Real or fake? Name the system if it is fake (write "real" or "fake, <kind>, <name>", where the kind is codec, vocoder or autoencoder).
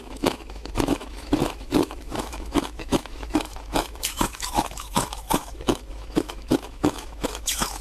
fake, autoencoder, DAC-VAE